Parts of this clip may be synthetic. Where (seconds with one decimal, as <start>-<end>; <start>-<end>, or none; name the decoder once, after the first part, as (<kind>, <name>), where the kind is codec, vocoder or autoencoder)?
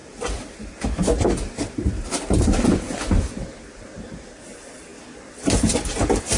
none